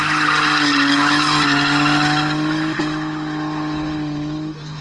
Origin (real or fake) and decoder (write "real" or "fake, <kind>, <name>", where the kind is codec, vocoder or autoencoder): real